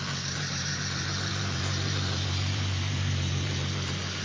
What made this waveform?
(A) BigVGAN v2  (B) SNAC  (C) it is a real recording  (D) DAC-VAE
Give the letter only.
A